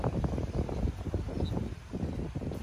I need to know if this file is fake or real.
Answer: real